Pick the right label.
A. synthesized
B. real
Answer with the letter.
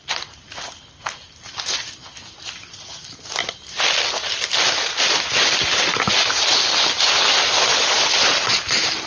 B